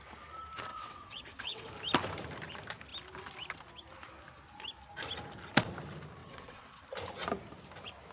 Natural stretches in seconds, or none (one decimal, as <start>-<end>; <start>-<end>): 0.0-0.7; 1.7-6.2; 6.8-8.1